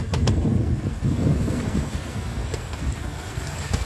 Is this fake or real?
fake